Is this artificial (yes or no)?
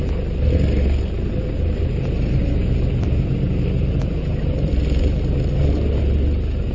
yes